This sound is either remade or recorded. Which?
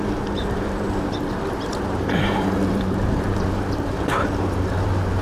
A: remade